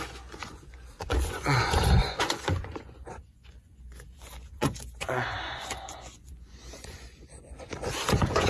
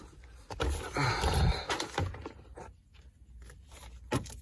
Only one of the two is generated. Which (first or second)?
first